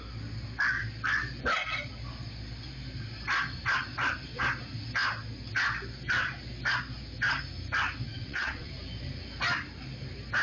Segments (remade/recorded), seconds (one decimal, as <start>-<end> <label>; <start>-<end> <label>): 0.0-8.1 recorded; 8.1-8.7 remade; 8.7-10.4 recorded